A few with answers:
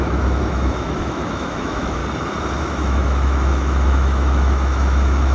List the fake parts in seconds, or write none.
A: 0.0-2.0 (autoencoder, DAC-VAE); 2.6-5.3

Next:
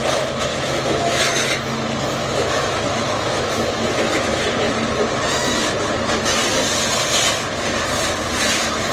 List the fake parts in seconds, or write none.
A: 0.5-1.2 (autoencoder, DAC-VAE); 2.2-4.4

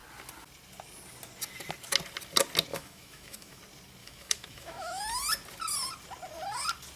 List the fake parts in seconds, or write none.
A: 2.7-3.6 (autoencoder, DAC-VAE); 4.0-5.0

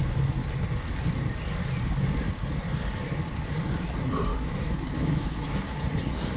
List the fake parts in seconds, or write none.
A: 4.3-5.8 (autoencoder, DAC-VAE)

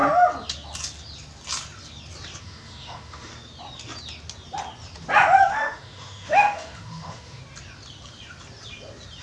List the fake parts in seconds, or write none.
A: 2.4-3.3 (autoencoder, DAC-VAE); 5.5-7.4

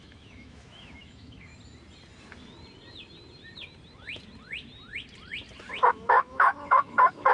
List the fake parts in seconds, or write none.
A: 0.0-1.5 (autoencoder, DAC-VAE); 5.9-7.3

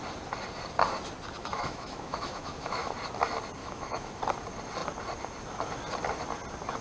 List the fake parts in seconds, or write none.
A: 1.4-2.9 (autoencoder, DAC-VAE); 3.6-4.2